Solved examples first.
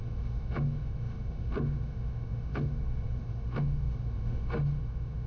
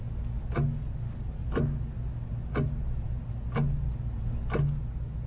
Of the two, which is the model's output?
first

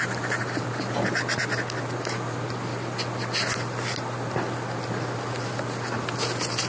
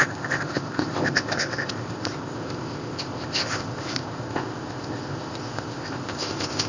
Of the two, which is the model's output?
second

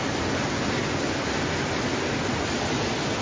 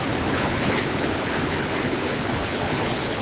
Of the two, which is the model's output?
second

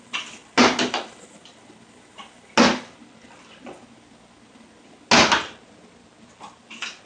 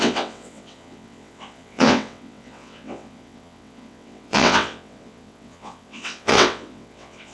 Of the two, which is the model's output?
second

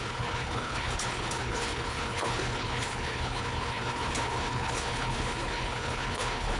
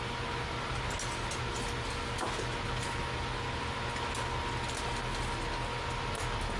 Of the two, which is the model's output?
first